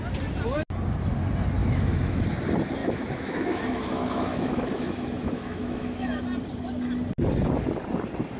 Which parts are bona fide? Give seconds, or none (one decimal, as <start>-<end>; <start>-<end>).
0.0-1.6; 2.2-2.8; 6.2-8.4